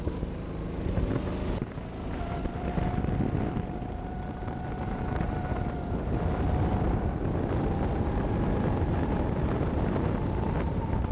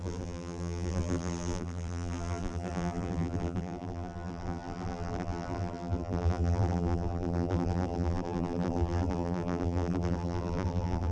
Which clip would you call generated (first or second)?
second